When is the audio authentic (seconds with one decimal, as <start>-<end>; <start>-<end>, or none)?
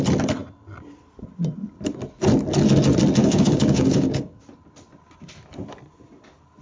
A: 0.0-3.2; 4.4-6.6